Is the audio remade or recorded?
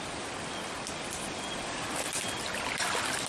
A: recorded